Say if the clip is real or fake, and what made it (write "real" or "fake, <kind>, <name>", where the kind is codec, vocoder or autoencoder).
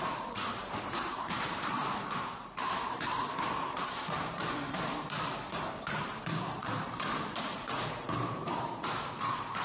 fake, vocoder, BigVGAN v2